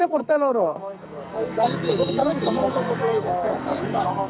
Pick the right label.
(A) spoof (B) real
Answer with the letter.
A